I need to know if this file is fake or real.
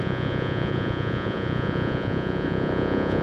fake